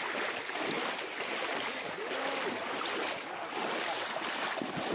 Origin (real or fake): real